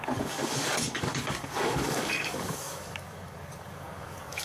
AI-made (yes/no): yes